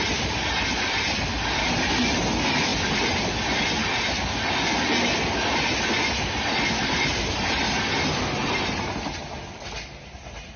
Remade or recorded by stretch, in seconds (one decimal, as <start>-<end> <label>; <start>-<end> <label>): 0.0-10.6 recorded